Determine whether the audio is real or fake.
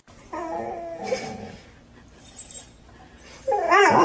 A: real